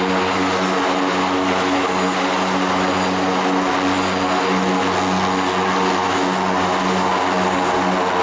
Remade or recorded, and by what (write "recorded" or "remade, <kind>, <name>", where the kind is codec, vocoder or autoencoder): recorded